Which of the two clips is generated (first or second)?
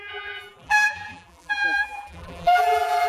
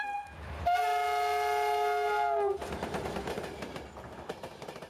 first